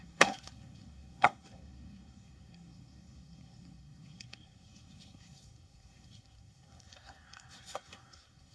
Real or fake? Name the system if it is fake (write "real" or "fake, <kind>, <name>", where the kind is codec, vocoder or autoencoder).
fake, codec, SNAC